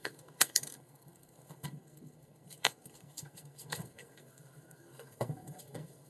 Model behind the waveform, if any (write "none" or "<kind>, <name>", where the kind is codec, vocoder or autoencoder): codec, SNAC